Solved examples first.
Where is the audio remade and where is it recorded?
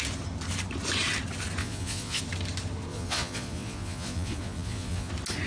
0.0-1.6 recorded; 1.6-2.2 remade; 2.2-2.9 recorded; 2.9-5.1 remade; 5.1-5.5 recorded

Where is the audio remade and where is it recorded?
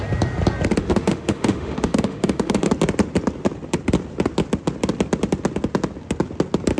0.0-0.8 recorded; 0.8-2.7 remade; 2.7-6.8 recorded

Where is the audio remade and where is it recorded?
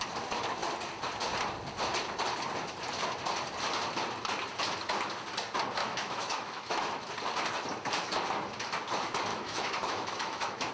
0.0-5.8 recorded; 5.8-7.1 remade; 7.1-9.3 recorded; 9.3-10.7 remade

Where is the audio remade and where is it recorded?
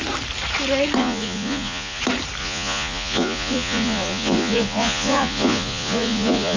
0.0-1.0 recorded; 1.0-2.0 remade; 2.0-2.4 recorded; 2.4-6.6 remade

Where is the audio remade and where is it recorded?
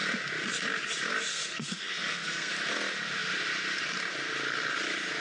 0.0-1.3 recorded; 1.3-2.5 remade; 2.5-5.2 recorded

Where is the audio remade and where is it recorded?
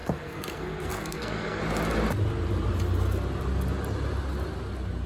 0.0-1.6 remade; 1.6-5.1 recorded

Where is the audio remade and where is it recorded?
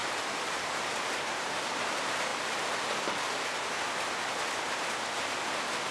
0.0-2.3 remade; 2.3-5.9 recorded